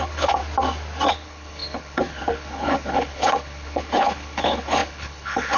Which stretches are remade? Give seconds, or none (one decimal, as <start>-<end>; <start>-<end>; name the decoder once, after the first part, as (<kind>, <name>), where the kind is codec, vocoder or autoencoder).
0.0-0.4 (codec, HILCodec); 1.1-5.6